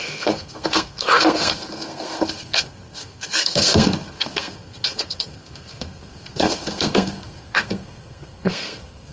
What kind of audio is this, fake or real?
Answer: fake